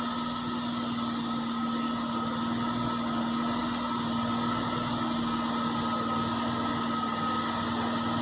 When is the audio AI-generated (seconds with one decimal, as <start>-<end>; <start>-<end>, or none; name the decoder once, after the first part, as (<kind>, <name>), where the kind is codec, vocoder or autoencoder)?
none